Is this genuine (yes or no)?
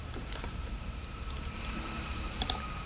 no